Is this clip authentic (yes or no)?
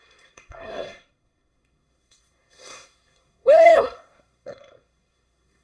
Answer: no